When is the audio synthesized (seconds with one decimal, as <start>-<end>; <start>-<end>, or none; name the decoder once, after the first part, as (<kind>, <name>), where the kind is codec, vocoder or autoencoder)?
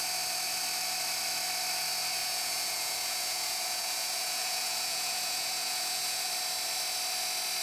2.2-6.3 (vocoder, Vocos)